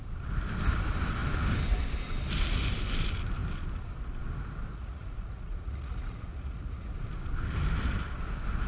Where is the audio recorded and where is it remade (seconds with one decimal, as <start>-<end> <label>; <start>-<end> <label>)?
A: 0.0-4.7 recorded; 4.7-6.9 remade; 6.9-8.7 recorded